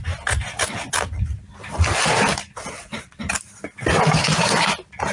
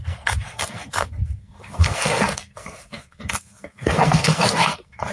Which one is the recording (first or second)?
first